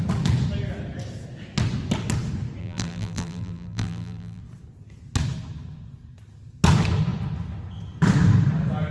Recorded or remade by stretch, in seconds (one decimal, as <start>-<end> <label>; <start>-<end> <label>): 0.0-2.6 recorded; 2.6-4.4 remade; 4.4-8.9 recorded